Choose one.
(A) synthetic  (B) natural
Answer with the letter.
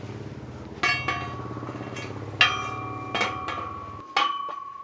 B